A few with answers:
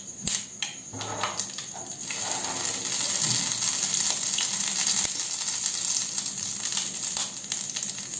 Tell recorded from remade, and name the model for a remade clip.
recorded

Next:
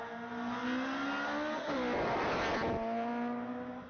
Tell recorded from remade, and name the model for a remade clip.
recorded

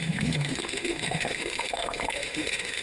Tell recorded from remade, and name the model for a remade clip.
remade, autoencoder, DAC-VAE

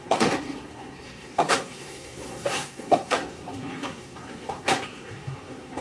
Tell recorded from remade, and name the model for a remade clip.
remade, codec, SNAC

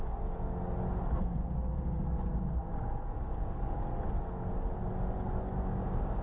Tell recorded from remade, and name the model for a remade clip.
recorded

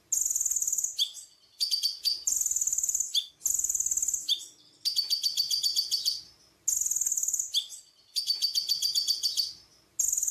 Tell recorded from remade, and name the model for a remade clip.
recorded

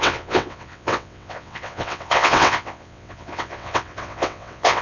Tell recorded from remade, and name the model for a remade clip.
remade, vocoder, WaveNeXt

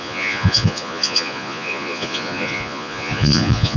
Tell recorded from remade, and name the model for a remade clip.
remade, vocoder, Vocos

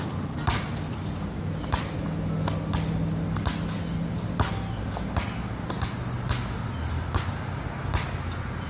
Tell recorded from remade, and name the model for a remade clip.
recorded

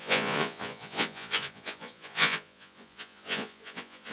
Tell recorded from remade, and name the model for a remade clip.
remade, vocoder, Vocos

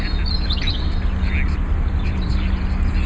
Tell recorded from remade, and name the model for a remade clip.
remade, vocoder, BigVGAN v2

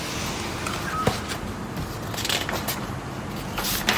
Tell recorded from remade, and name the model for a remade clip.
recorded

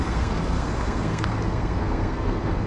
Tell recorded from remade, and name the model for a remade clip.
remade, codec, SNAC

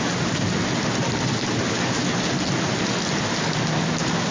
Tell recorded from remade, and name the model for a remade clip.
recorded